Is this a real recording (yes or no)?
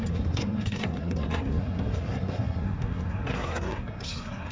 no